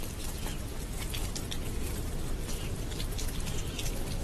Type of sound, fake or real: fake